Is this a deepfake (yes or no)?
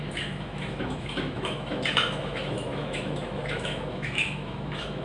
yes